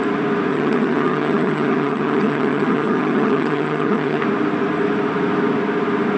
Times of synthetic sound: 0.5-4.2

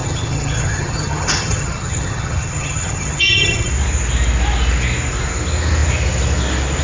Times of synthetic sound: 0.0-3.7

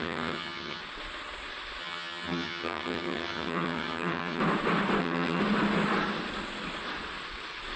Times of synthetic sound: 0.0-0.8; 1.8-4.4; 5.0-5.4

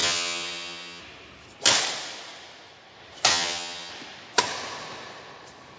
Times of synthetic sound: 0.0-1.0; 3.3-3.9

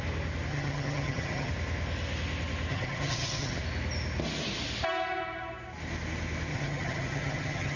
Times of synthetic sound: 0.5-1.5; 2.7-3.6; 6.5-7.8

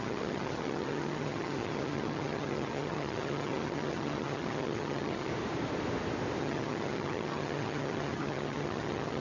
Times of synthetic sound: 0.0-5.3; 6.4-9.2